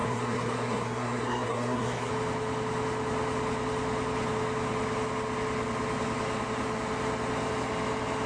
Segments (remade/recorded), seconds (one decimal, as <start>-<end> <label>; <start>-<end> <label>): 0.0-2.1 remade; 2.1-8.3 recorded